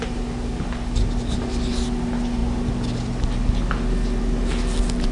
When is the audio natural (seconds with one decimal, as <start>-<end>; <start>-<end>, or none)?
0.0-5.1